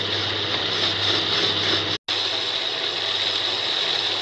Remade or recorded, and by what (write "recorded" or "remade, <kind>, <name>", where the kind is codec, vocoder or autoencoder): recorded